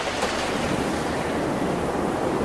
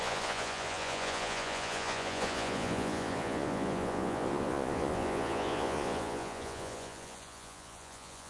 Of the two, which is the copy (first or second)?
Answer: second